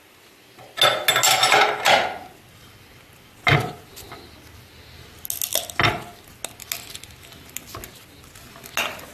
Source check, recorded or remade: recorded